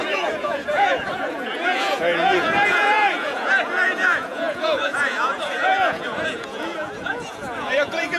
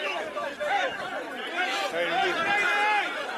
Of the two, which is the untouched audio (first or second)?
second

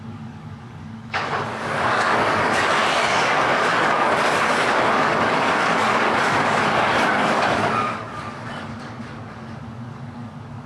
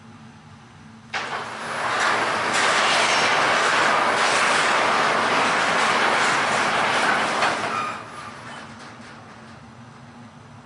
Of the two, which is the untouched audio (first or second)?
second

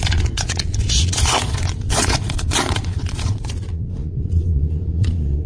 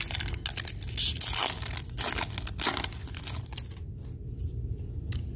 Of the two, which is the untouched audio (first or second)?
second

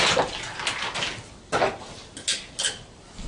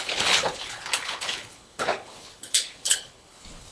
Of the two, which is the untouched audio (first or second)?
first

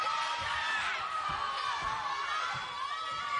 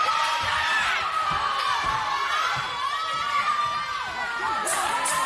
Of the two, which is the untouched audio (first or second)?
first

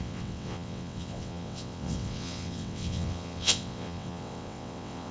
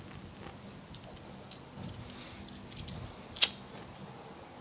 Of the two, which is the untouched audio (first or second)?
second